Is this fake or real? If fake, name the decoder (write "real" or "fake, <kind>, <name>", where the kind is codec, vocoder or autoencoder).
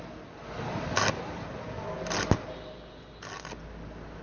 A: real